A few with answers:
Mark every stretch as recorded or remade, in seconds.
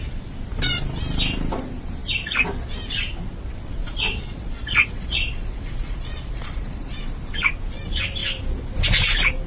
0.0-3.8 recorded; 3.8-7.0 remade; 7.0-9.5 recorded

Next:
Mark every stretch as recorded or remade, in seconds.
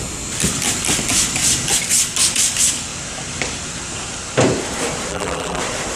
0.0-5.1 recorded; 5.1-5.6 remade; 5.6-6.0 recorded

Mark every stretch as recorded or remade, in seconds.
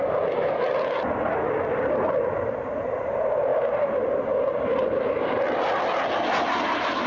0.0-7.1 recorded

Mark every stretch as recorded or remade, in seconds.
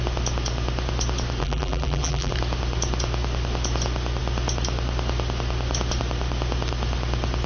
0.0-1.4 recorded; 1.4-2.3 remade; 2.3-7.5 recorded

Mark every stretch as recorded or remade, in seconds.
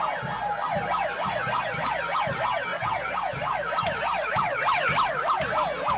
0.0-6.0 recorded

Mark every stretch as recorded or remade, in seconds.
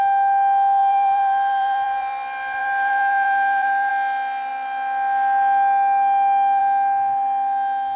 0.0-0.8 recorded; 0.8-3.9 remade; 3.9-8.0 recorded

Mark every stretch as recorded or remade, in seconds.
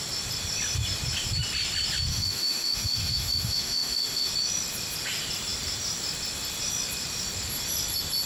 0.0-2.1 recorded; 2.1-4.3 remade; 4.3-8.3 recorded